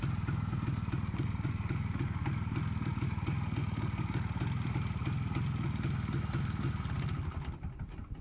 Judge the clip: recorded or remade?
recorded